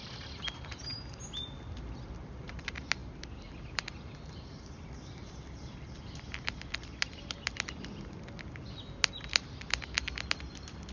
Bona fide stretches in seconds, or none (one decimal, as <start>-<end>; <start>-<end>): 0.0-10.9